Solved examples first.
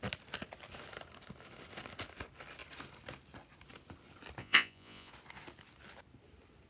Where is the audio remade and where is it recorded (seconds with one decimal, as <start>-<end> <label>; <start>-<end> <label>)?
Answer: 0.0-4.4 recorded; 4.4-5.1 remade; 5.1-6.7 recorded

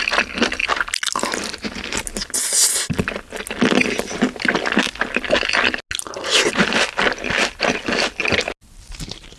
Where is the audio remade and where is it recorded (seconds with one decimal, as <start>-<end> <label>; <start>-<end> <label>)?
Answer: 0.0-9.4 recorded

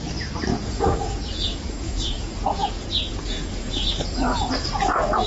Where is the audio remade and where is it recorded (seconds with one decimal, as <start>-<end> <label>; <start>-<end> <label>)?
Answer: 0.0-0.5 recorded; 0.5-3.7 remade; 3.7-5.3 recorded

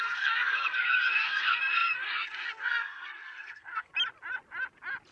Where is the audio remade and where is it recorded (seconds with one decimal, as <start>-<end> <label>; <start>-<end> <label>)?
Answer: 0.0-3.9 remade; 3.9-5.1 recorded

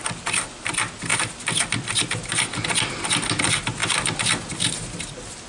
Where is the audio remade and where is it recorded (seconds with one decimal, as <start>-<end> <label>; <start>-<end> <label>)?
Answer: 0.0-5.5 recorded

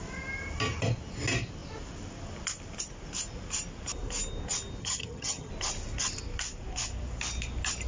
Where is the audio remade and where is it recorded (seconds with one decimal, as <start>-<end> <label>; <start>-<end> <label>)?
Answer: 0.0-4.8 recorded; 4.8-5.5 remade; 5.5-7.9 recorded

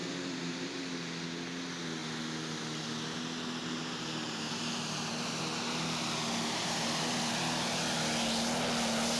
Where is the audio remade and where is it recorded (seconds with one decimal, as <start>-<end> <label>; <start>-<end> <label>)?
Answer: 0.0-0.8 remade; 0.8-3.6 recorded; 3.6-5.4 remade; 5.4-9.2 recorded

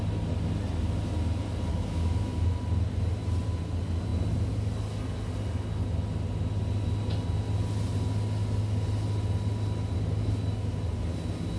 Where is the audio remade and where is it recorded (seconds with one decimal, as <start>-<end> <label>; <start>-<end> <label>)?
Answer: 0.0-1.7 recorded; 1.7-2.5 remade; 2.5-11.6 recorded